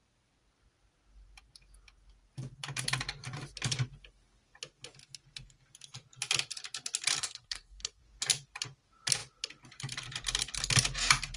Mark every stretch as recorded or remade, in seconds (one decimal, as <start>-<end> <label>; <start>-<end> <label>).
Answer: 0.0-7.2 recorded; 7.2-8.0 remade; 8.0-11.4 recorded